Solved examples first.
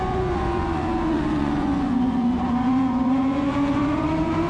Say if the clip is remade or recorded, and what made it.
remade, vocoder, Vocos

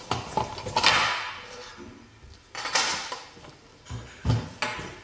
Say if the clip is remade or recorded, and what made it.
recorded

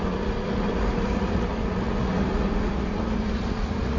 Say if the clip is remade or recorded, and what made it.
remade, vocoder, Vocos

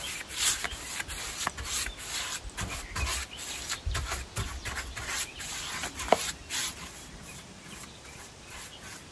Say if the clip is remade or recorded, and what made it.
recorded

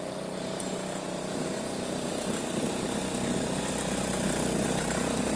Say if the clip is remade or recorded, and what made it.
recorded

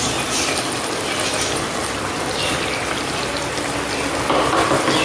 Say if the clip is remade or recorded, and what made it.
recorded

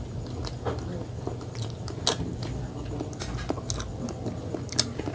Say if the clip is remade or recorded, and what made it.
recorded